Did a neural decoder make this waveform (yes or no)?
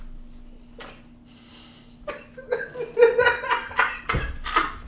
no